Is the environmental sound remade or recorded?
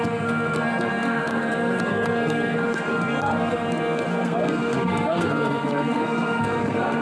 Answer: remade